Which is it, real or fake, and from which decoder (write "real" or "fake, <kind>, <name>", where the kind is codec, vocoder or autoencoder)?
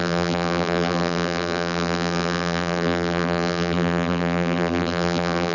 fake, vocoder, BigVGAN v2